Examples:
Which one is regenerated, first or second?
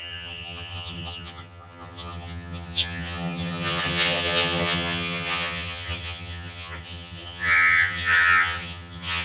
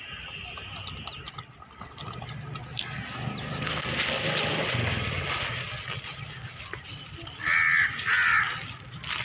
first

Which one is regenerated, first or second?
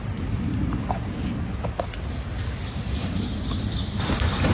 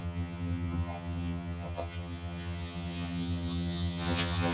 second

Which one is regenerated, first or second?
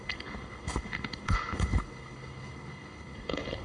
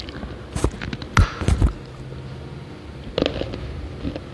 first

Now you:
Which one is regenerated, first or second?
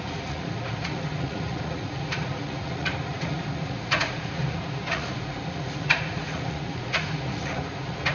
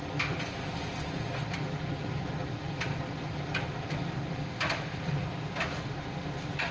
first